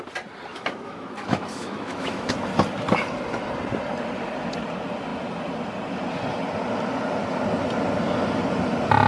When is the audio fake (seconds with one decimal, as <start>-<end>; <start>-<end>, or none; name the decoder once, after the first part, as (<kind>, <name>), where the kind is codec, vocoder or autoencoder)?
0.5-2.3 (autoencoder, DAC-VAE)